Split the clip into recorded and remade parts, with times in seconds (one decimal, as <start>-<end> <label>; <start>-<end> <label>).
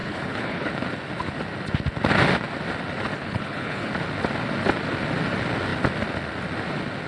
0.0-0.7 remade; 0.7-3.1 recorded; 3.1-3.9 remade; 3.9-7.1 recorded